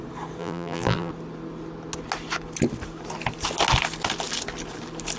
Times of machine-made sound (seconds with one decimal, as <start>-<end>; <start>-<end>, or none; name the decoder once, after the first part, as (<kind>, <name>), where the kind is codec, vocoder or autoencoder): 0.4-1.1 (vocoder, BigVGAN v2)